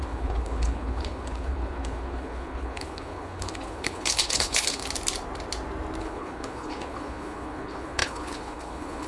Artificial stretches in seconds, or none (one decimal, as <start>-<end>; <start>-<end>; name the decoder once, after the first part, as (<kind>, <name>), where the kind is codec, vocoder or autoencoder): 0.0-4.8 (codec, HILCodec); 6.0-9.1